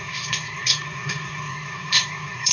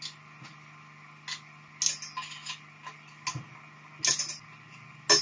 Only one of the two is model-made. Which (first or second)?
first